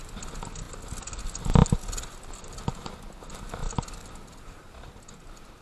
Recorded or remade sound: recorded